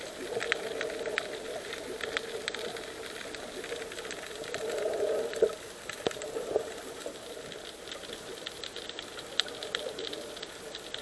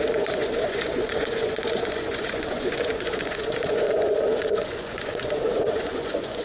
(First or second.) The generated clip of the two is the second